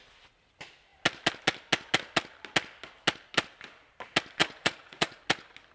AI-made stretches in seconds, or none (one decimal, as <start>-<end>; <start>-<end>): 4.4-5.2